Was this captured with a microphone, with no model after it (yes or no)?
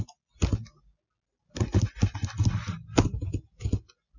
yes